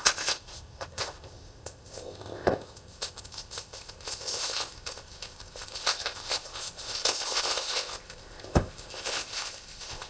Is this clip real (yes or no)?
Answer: no